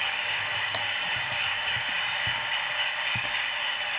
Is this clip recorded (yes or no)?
no